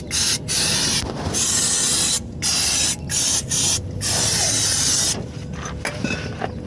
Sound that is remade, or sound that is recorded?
recorded